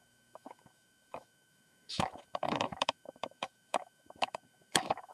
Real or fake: fake